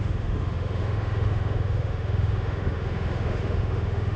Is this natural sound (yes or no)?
no